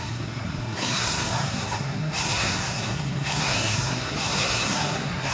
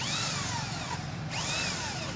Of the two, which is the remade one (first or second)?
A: first